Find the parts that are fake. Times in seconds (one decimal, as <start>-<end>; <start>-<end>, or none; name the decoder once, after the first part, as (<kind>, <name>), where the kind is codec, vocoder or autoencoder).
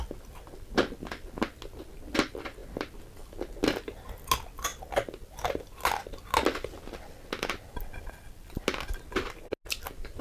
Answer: none